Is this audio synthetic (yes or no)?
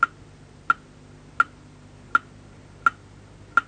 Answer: no